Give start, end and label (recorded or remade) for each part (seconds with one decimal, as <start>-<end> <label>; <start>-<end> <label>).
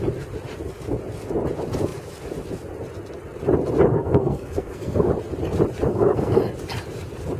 0.0-3.9 recorded; 3.9-5.1 remade; 5.1-5.9 recorded; 5.9-6.4 remade; 6.4-7.4 recorded